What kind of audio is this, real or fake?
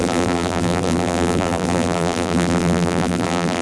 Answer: fake